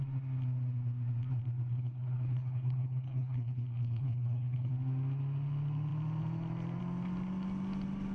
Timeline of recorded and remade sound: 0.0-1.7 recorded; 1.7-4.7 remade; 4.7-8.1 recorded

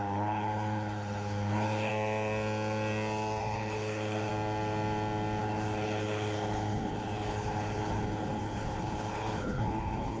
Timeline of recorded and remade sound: 0.0-1.9 remade; 1.9-3.4 recorded; 3.4-4.3 remade; 4.3-5.4 recorded; 5.4-10.2 remade

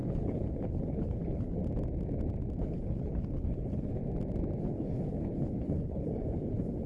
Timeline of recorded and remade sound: 0.0-1.6 remade; 1.6-2.6 recorded; 2.6-4.0 remade; 4.0-4.6 recorded; 4.6-6.9 remade

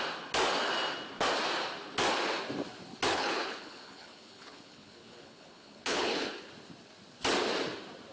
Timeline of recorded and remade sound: 0.0-3.1 recorded; 3.1-6.5 remade; 6.5-8.1 recorded

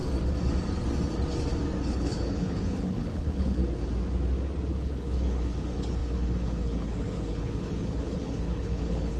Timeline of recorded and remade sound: 0.0-1.8 recorded; 1.8-3.6 remade; 3.6-4.7 recorded; 4.7-9.2 remade

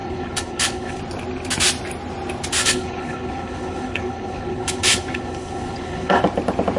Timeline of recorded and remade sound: 0.0-1.0 remade; 1.0-2.6 recorded; 2.6-6.2 remade; 6.2-6.8 recorded